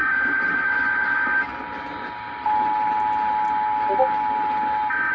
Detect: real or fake real